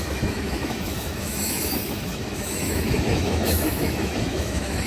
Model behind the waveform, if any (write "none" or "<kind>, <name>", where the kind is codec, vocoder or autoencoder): autoencoder, DAC-VAE